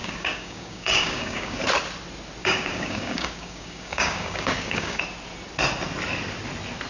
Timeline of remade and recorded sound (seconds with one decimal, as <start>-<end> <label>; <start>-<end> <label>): 0.0-1.6 remade; 1.6-2.4 recorded; 2.4-5.0 remade; 5.0-6.9 recorded